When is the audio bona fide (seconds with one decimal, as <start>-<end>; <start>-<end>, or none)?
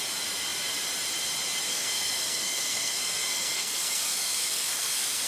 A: 0.0-1.7